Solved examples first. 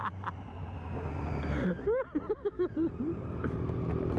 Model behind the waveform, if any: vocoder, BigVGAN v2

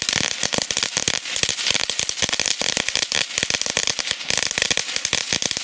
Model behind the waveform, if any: none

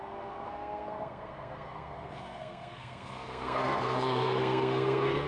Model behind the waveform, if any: codec, SNAC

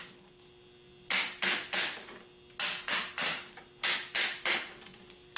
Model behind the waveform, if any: none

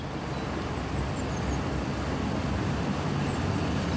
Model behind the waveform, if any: none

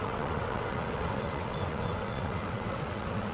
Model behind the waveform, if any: vocoder, WaveNeXt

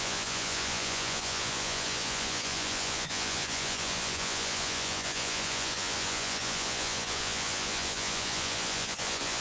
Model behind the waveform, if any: vocoder, Vocos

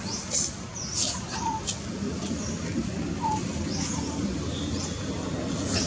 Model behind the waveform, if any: none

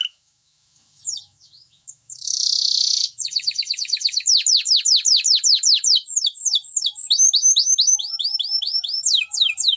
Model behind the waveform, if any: autoencoder, DAC-VAE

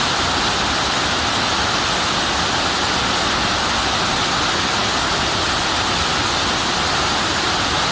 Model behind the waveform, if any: none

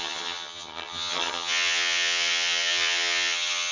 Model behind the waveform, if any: vocoder, HiFi-GAN